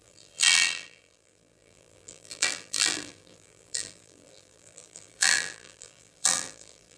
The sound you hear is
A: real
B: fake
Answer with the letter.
B